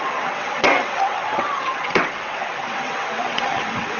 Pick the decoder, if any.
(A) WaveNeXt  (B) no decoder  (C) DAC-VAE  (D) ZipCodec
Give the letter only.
A